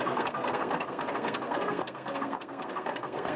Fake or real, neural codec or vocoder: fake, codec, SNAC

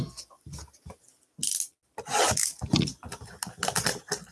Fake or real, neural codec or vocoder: real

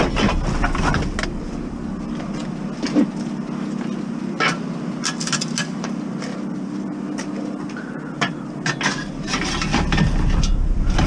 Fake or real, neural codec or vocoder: real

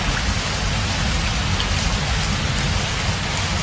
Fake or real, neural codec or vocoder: real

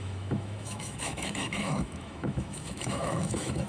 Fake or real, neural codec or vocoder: fake, autoencoder, DAC-VAE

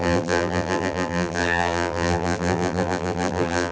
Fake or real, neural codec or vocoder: fake, vocoder, BigVGAN v2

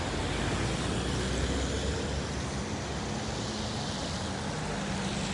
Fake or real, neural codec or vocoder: real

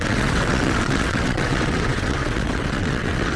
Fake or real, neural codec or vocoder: fake, vocoder, WaveNeXt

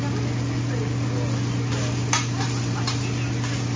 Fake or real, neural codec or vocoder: real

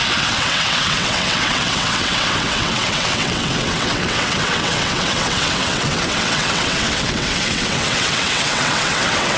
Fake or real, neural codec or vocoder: fake, vocoder, WaveNeXt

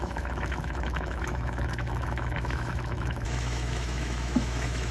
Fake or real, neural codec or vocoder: fake, autoencoder, DAC-VAE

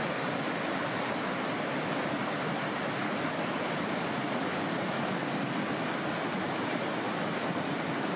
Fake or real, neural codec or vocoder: real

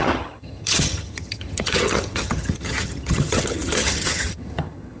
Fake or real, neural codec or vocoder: fake, vocoder, HiFi-GAN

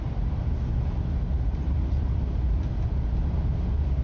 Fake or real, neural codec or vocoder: real